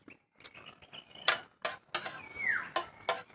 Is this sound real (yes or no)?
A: yes